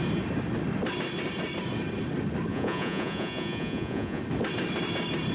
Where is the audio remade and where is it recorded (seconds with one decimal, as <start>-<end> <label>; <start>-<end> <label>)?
0.0-2.5 recorded; 2.5-4.2 remade; 4.2-5.3 recorded